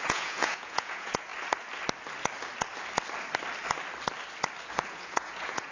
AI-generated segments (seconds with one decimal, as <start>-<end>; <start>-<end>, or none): 0.0-1.3; 4.7-5.7